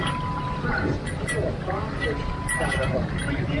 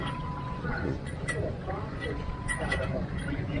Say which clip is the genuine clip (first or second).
first